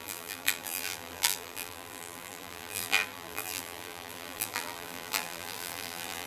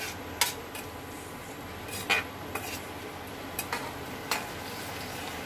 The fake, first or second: first